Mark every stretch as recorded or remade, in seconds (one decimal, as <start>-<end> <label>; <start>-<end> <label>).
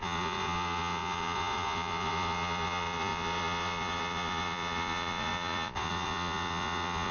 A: 0.0-7.1 remade